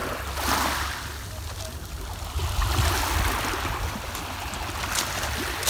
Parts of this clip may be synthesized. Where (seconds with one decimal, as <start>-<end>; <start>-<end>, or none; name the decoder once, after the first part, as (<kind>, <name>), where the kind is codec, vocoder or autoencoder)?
none